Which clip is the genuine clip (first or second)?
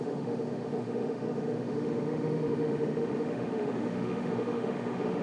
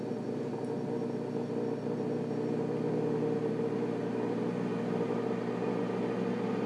second